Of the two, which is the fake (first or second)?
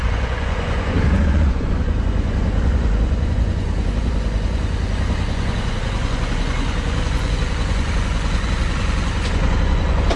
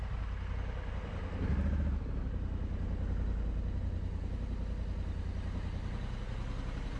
first